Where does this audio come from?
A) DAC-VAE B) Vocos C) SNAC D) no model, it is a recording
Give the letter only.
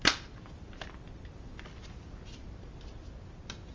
D